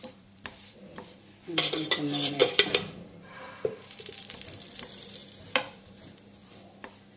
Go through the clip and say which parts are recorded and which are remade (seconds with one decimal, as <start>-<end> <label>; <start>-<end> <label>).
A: 0.0-5.2 remade; 5.2-5.7 recorded; 5.7-7.2 remade